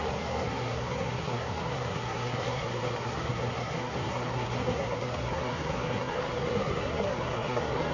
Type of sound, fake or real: fake